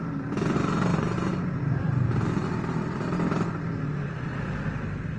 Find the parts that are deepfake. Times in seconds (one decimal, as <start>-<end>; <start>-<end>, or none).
0.0-5.2